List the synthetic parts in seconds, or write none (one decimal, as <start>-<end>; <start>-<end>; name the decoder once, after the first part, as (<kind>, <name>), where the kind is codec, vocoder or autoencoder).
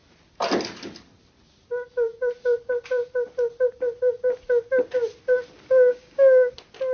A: 5.9-6.5 (codec, DAC)